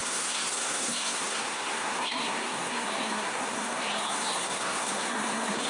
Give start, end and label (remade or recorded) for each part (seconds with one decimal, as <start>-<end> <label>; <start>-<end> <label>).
0.0-5.7 remade

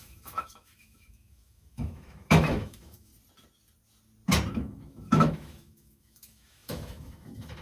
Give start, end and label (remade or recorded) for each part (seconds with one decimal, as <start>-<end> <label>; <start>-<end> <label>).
0.0-3.1 remade; 3.1-4.5 recorded; 4.5-7.6 remade